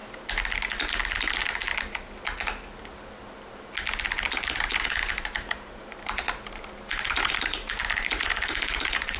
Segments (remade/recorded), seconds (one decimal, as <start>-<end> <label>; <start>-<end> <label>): 0.0-4.7 recorded; 4.7-9.2 remade